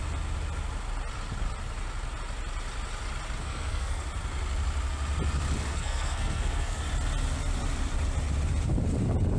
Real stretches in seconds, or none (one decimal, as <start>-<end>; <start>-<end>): 0.0-3.4; 4.0-5.7; 6.8-9.4